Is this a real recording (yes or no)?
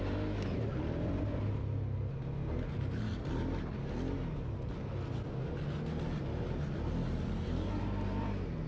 yes